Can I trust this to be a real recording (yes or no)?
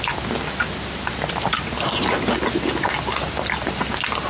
yes